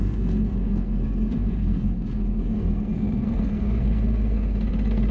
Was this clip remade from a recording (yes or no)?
yes